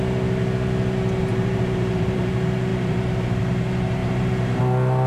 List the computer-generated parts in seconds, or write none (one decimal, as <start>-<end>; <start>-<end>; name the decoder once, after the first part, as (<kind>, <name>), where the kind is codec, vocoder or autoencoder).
1.3-2.3 (vocoder, BigVGAN v2); 2.7-3.4; 4.0-4.6